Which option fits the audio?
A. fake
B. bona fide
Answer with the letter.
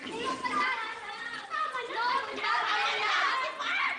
B